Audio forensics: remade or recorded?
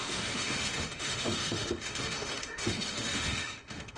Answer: remade